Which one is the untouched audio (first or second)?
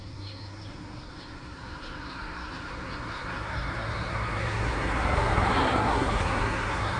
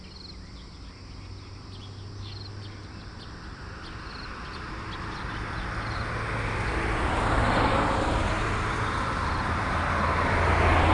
second